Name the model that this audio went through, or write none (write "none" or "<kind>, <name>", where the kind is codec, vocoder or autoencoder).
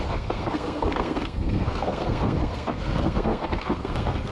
codec, SNAC